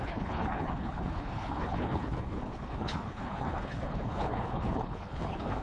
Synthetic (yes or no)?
yes